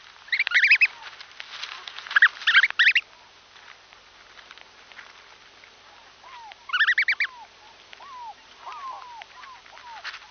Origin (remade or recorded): recorded